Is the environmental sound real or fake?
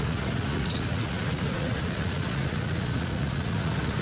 fake